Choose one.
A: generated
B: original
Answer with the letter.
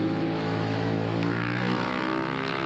A